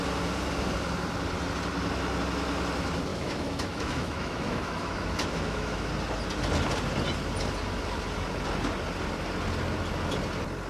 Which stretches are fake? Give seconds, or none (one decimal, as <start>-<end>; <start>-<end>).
3.1-5.9